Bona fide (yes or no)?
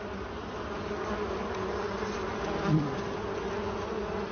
yes